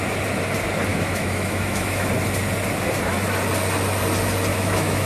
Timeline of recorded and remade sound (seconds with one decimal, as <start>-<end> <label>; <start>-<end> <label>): 0.0-0.9 recorded; 0.9-2.1 remade; 2.1-4.5 recorded; 4.5-5.1 remade